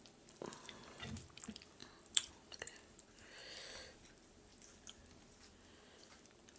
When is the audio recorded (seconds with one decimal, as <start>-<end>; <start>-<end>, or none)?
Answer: 3.4-4.1; 4.5-5.3